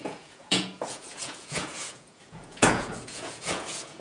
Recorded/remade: remade